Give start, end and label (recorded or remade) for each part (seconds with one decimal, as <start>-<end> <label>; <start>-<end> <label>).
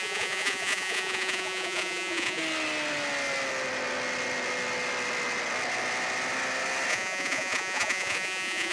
0.0-2.4 remade; 2.4-6.9 recorded; 6.9-8.7 remade